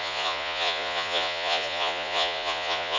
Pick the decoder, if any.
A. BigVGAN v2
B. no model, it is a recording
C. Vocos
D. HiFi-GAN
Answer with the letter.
C